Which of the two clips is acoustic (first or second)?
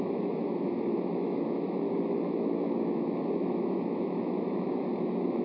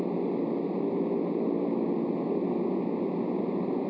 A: second